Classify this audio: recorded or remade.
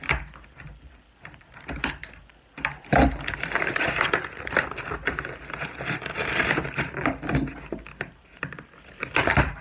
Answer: recorded